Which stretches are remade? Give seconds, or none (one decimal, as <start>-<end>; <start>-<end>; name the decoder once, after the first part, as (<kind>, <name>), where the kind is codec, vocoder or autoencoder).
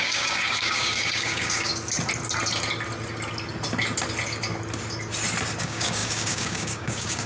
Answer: 0.0-1.7 (codec, DAC); 5.6-7.3